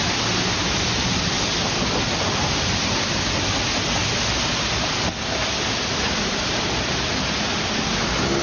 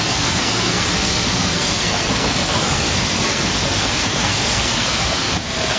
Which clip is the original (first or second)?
first